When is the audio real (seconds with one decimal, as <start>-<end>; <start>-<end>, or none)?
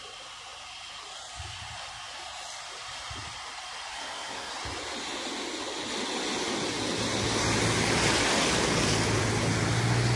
0.0-3.9; 4.5-10.2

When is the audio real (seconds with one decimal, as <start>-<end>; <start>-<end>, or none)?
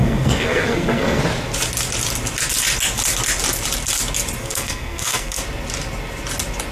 1.2-4.4; 5.4-6.7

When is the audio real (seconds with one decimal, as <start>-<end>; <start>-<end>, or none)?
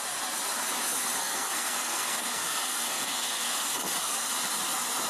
0.0-1.2; 4.3-5.1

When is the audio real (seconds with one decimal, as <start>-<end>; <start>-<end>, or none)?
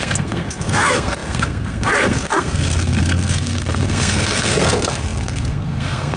none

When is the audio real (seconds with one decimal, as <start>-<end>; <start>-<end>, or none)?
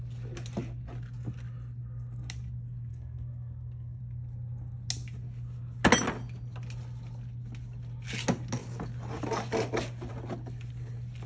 0.0-2.9; 4.0-11.3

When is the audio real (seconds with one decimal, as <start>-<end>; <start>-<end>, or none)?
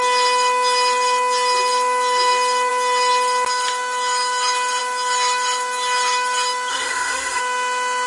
0.0-6.7; 7.4-8.1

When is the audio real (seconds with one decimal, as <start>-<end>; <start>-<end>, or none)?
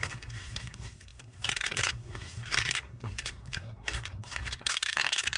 none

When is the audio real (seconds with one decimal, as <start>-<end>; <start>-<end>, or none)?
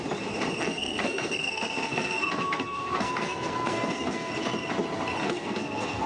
0.0-0.6; 4.3-5.2